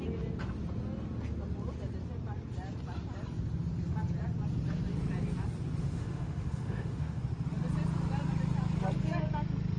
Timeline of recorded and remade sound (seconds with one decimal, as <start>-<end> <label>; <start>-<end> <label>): 0.0-5.8 recorded; 5.8-7.2 remade; 7.2-9.8 recorded